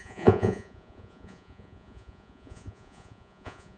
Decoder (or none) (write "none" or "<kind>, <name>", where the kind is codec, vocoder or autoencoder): vocoder, Vocos